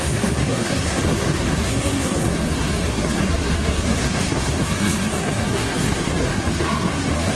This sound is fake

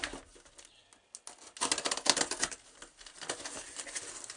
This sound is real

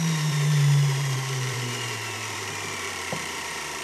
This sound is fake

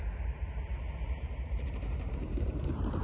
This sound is fake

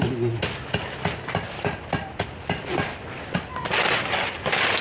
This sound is real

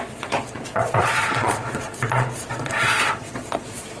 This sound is fake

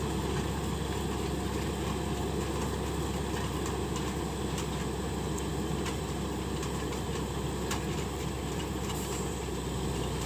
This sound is real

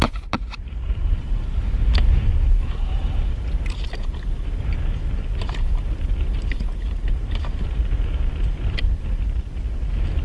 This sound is real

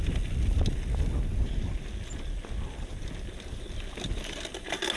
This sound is real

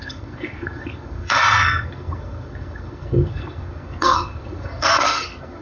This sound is fake